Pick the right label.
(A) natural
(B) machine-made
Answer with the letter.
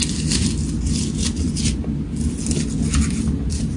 A